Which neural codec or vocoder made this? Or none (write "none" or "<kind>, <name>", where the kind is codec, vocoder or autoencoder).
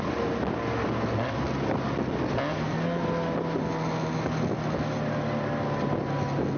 none